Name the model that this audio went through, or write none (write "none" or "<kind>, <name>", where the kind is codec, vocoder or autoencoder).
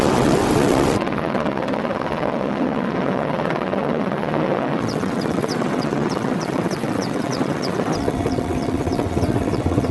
vocoder, WaveNeXt